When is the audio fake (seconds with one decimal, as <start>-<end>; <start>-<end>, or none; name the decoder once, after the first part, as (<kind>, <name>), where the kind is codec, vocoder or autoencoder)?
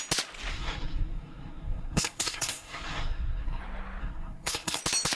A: 0.5-3.6 (codec, SNAC); 4.0-4.8